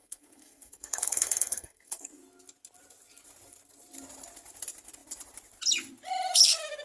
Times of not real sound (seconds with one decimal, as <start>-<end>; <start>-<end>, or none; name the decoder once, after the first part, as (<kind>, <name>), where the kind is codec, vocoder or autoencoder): 0.0-2.1 (codec, SNAC)